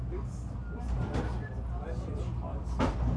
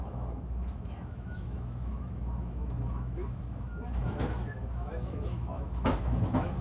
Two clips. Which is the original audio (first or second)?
first